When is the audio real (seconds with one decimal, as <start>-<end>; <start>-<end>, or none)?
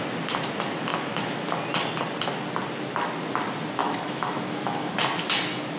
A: 0.0-0.9; 1.6-3.8; 4.9-5.8